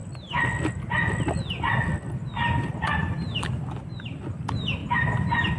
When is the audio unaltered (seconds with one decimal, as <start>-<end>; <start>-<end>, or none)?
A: 0.0-5.6